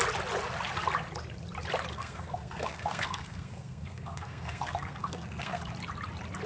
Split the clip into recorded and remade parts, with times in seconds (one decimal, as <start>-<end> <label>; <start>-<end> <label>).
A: 0.0-1.9 recorded; 1.9-5.6 remade; 5.6-6.5 recorded